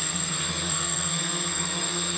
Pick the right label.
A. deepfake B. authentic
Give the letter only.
A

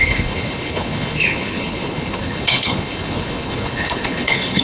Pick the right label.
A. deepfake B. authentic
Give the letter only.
A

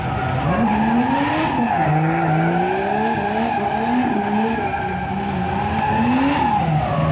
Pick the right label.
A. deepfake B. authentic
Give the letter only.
B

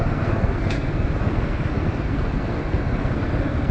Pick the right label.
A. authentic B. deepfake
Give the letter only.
B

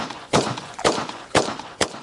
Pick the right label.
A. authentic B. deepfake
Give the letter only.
B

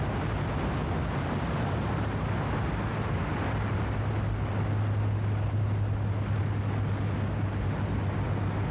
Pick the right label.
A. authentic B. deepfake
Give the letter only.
A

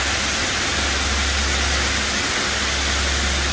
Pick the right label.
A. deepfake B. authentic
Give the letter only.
B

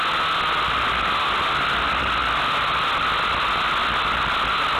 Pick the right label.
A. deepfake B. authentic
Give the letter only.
B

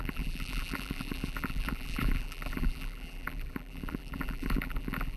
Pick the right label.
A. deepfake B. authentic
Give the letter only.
A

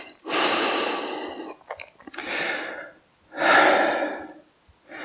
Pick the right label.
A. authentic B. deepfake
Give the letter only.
A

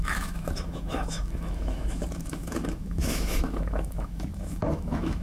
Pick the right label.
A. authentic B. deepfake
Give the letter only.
B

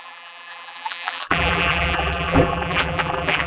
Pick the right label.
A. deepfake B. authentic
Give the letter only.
A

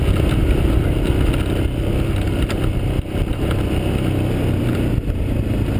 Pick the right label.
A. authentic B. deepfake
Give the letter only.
A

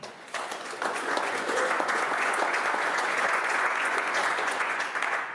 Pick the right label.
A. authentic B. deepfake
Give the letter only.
B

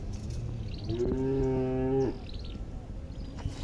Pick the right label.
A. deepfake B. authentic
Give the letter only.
B